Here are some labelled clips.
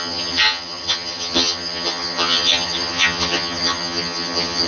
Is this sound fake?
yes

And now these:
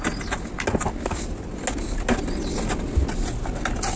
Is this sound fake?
no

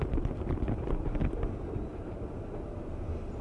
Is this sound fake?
no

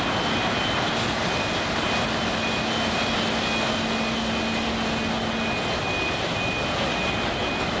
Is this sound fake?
no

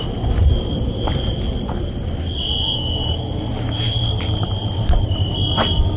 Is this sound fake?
no